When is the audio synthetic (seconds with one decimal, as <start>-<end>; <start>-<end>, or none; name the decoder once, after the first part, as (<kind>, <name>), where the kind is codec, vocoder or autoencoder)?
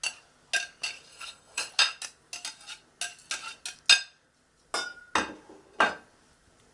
1.1-1.7 (codec, SNAC)